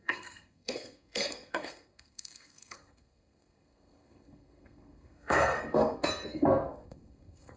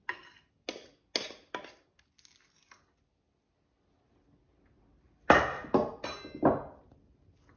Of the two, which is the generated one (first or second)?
first